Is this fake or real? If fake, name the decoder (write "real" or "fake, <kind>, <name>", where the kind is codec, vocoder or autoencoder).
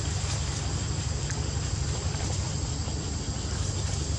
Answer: fake, vocoder, BigVGAN v2